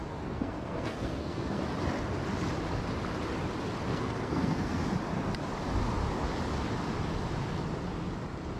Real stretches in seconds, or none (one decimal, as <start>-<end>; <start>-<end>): 1.6-3.9; 4.8-8.6